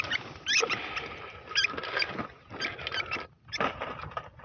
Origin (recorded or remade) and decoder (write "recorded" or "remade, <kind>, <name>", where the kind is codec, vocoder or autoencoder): recorded